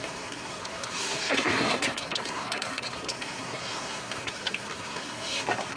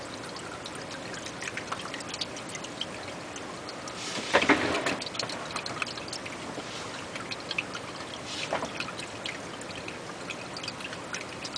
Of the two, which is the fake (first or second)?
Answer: first